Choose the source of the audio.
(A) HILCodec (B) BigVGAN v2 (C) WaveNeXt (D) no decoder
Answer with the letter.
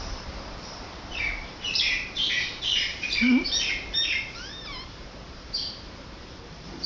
B